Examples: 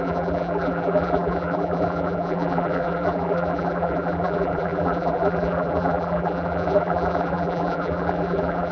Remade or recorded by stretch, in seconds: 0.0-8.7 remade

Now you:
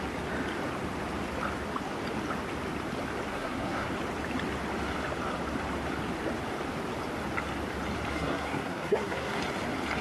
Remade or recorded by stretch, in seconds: 0.0-3.3 recorded; 3.3-3.9 remade; 3.9-8.1 recorded; 8.1-9.4 remade; 9.4-10.0 recorded

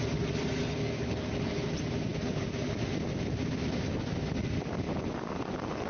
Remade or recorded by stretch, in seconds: 0.0-5.9 recorded

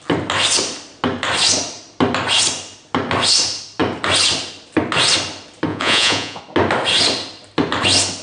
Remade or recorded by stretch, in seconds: 0.0-5.7 recorded; 5.7-6.4 remade; 6.4-8.2 recorded